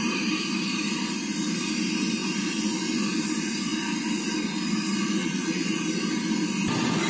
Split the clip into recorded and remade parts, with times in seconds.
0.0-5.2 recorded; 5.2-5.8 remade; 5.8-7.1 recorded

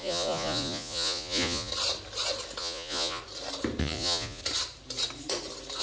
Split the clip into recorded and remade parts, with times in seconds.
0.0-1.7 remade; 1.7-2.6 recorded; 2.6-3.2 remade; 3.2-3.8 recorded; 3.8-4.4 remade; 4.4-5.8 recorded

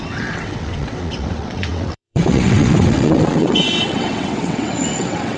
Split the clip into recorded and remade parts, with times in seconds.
0.0-5.4 remade